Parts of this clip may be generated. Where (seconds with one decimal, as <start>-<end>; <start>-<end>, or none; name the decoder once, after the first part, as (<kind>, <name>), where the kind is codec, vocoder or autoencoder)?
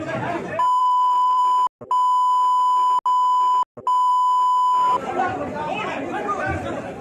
0.8-1.4 (vocoder, BigVGAN v2)